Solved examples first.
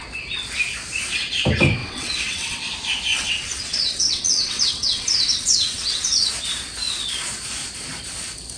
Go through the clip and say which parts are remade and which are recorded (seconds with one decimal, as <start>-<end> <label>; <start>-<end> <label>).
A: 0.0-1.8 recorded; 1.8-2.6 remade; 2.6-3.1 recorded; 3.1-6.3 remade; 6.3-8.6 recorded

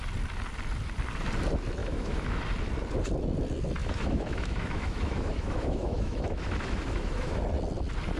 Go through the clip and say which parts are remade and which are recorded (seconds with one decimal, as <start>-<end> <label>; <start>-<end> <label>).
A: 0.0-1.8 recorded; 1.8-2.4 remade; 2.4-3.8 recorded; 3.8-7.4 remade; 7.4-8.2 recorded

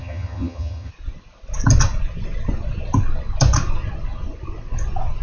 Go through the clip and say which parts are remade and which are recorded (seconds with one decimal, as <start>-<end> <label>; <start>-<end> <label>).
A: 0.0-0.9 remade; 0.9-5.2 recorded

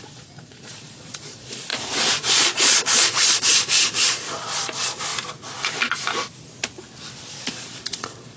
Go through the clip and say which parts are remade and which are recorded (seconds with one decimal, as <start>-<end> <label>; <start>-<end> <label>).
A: 0.0-1.7 remade; 1.7-2.3 recorded; 2.3-5.1 remade; 5.1-7.5 recorded; 7.5-8.4 remade

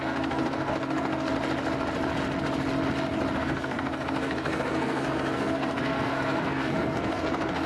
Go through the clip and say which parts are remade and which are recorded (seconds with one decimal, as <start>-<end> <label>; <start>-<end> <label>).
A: 0.0-1.3 remade; 1.3-3.4 recorded; 3.4-7.7 remade

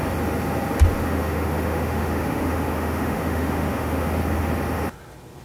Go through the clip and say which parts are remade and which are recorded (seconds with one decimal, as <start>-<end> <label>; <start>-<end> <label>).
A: 0.0-1.0 recorded; 1.0-4.2 remade; 4.2-5.4 recorded

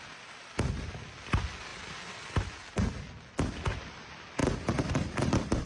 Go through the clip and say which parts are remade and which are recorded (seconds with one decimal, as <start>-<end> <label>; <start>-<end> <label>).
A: 0.0-4.4 recorded; 4.4-5.7 remade

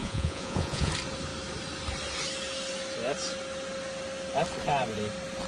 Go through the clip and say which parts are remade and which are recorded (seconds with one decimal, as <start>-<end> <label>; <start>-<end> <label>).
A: 0.0-0.9 remade; 0.9-5.5 recorded